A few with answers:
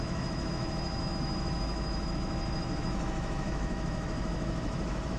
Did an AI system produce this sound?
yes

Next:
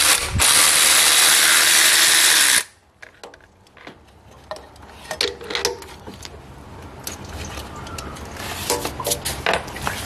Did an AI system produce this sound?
no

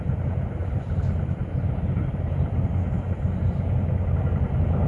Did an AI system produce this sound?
no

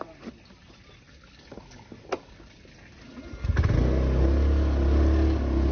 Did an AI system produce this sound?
no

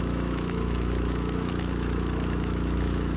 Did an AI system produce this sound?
yes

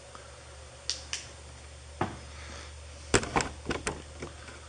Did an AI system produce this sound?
no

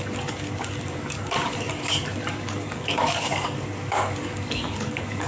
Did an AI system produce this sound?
yes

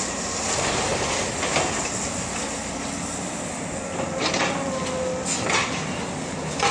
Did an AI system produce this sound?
no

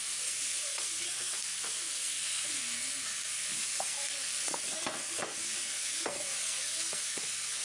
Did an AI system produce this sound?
yes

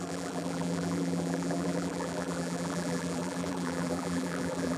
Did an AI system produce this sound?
yes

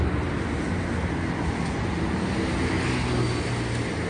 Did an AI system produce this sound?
no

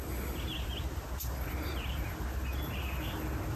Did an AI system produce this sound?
no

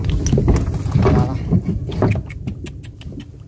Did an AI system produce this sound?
no